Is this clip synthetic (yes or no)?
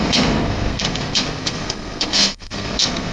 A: yes